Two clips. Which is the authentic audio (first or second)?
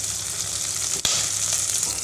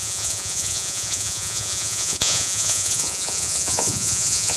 first